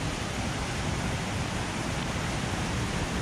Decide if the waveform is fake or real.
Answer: real